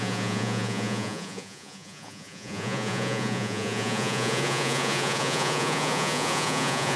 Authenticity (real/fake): fake